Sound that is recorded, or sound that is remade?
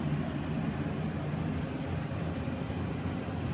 recorded